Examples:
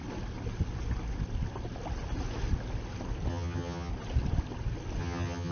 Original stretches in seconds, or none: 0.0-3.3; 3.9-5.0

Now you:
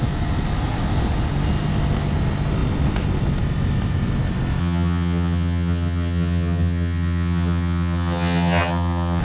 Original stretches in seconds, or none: 0.0-4.6

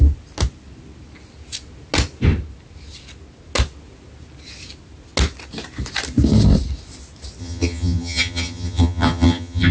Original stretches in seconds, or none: 0.0-7.4

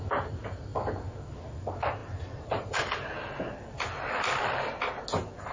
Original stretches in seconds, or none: 0.0-5.5

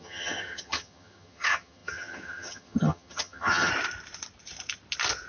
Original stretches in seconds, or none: 3.7-5.3

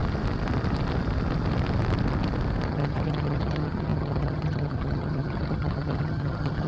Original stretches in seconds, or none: 0.0-2.7

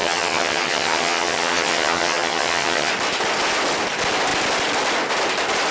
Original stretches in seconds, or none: 2.9-5.7